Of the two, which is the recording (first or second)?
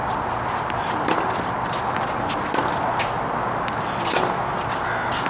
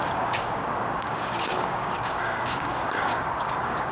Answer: first